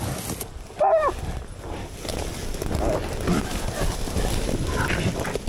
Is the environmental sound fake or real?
real